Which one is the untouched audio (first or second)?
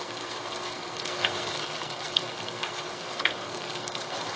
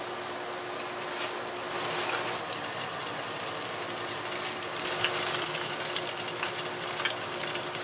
second